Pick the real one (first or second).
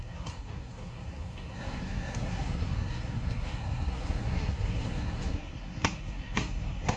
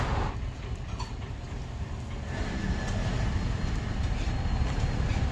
second